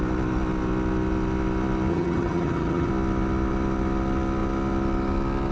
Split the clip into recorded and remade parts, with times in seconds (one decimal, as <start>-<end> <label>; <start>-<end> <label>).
0.0-1.9 recorded; 1.9-2.9 remade; 2.9-5.5 recorded